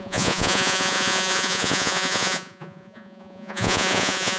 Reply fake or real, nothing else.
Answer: fake